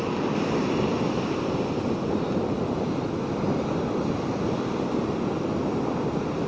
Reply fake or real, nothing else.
real